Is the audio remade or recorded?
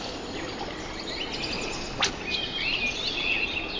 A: recorded